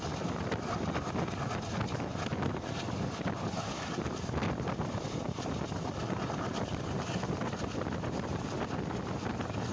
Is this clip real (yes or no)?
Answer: yes